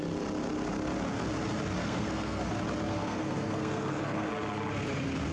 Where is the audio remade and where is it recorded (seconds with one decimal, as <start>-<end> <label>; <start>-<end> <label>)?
0.0-1.8 recorded; 1.8-2.5 remade; 2.5-2.9 recorded; 2.9-4.3 remade; 4.3-5.3 recorded